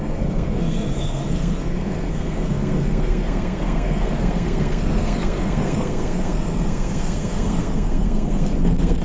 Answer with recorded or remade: remade